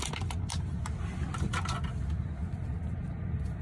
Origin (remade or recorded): recorded